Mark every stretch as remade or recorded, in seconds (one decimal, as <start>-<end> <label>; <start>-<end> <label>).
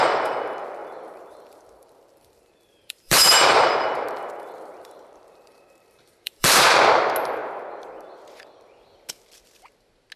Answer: 0.0-0.8 recorded; 0.8-4.3 remade; 4.3-4.7 recorded; 4.7-6.8 remade; 6.8-10.2 recorded